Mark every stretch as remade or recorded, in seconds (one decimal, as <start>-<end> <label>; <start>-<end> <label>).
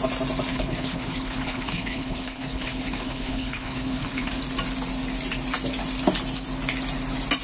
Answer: 0.0-0.5 recorded; 0.5-4.4 remade; 4.4-7.4 recorded